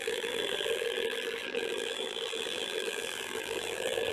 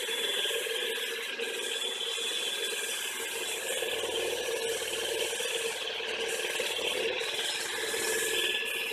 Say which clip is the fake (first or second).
first